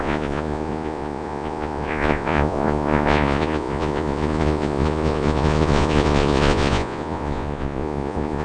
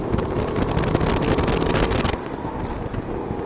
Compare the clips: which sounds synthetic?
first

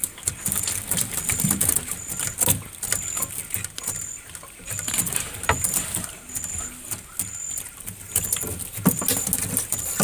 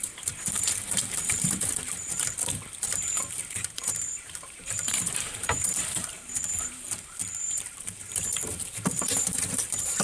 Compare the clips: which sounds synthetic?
second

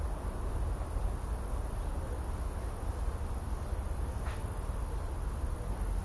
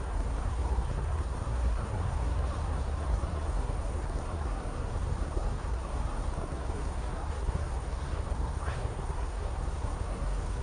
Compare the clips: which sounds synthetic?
second